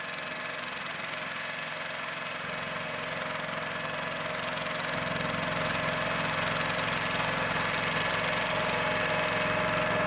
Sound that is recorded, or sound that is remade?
recorded